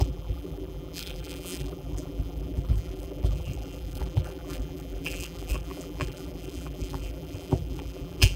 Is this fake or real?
fake